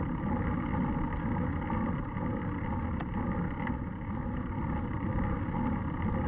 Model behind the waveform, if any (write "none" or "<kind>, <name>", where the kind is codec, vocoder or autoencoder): none